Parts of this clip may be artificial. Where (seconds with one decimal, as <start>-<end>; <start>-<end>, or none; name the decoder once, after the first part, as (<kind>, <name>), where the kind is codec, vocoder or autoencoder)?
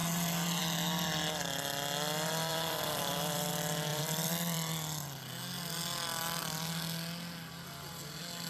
0.0-0.6 (vocoder, BigVGAN v2); 2.5-3.5; 3.9-4.7